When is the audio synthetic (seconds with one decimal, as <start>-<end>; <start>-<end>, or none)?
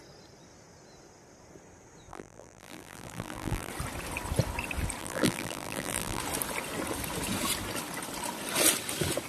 2.1-3.7; 5.0-6.2